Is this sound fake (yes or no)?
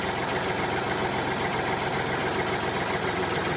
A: no